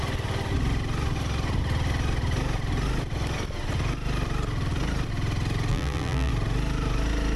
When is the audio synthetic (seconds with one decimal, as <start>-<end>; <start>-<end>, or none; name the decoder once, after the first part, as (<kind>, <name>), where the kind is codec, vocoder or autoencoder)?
5.7-6.3 (vocoder, BigVGAN v2)